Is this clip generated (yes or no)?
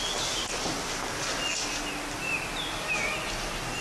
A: no